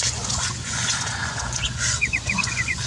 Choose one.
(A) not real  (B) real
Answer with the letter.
A